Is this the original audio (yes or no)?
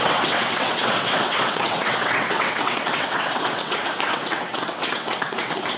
no